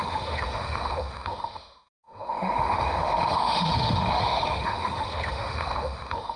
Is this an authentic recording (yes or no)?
no